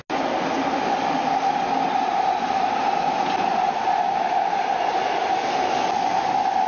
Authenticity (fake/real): real